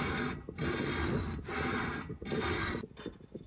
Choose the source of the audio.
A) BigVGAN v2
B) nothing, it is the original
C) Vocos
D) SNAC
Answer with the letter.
B